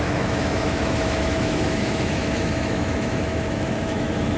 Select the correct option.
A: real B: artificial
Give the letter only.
B